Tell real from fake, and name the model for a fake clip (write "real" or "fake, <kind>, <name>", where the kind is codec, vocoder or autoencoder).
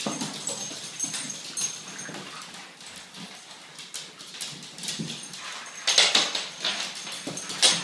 real